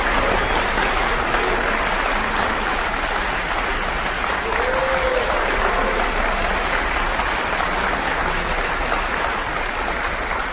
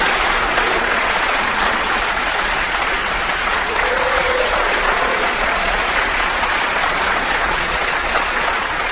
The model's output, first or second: second